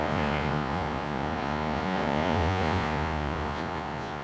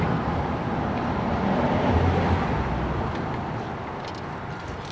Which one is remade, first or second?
first